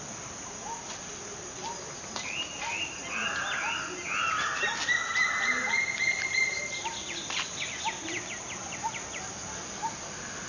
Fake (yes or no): no